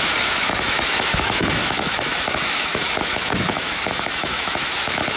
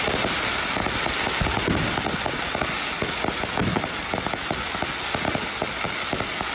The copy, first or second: first